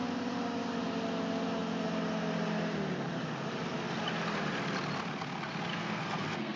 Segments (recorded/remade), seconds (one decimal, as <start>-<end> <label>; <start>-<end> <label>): 0.0-5.7 recorded; 5.7-6.6 remade